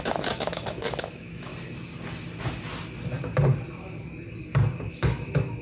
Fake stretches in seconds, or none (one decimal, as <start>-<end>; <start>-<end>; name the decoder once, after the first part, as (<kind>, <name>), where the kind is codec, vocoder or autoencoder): 0.0-1.5 (autoencoder, DAC-VAE); 4.9-5.6